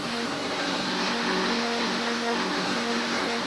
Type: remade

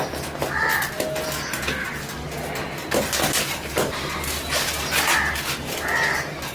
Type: recorded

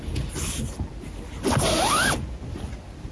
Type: recorded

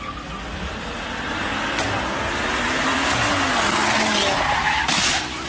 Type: recorded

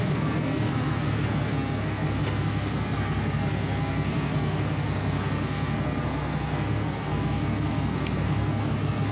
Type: remade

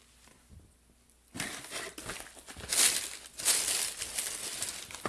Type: recorded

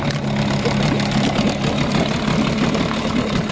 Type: recorded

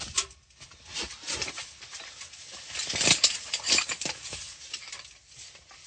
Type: remade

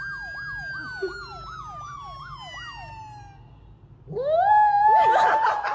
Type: recorded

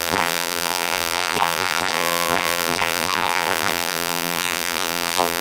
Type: remade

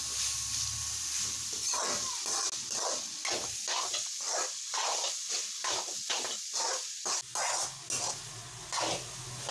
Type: recorded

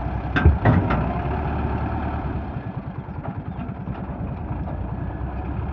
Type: recorded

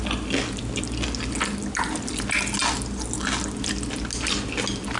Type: recorded